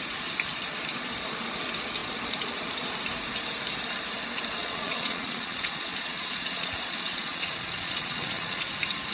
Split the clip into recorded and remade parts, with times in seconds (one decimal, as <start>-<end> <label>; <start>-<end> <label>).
0.0-4.6 recorded; 4.6-8.7 remade; 8.7-9.1 recorded